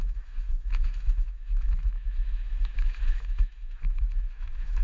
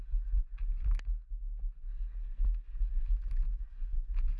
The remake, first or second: first